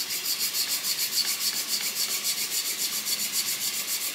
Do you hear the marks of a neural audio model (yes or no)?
no